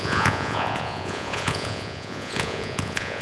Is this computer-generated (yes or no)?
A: yes